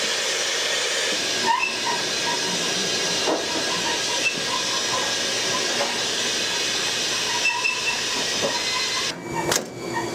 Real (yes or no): yes